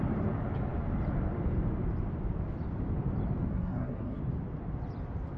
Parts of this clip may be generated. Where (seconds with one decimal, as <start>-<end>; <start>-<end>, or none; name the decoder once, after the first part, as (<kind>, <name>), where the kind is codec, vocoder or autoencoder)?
3.5-4.2 (codec, SNAC)